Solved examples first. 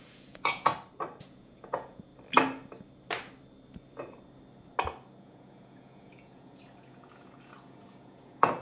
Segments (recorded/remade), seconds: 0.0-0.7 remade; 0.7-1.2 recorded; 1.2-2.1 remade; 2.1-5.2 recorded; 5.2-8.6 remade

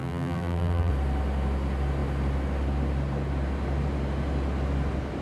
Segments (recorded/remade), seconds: 0.0-0.9 remade; 0.9-5.2 recorded

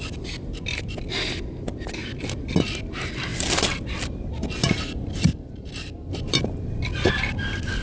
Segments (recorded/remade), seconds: 0.0-3.3 recorded; 3.3-4.0 remade; 4.0-5.3 recorded; 5.3-6.1 remade; 6.1-7.8 recorded

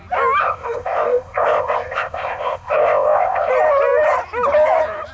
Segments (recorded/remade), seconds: 0.0-0.4 recorded; 0.4-3.5 remade; 3.5-5.1 recorded